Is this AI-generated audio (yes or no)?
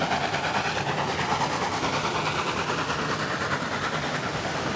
no